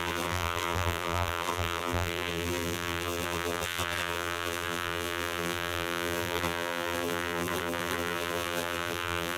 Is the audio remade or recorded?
remade